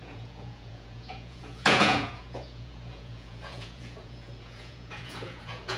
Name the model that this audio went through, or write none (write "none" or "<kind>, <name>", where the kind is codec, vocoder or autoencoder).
vocoder, Vocos